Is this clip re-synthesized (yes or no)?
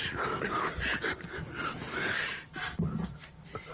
no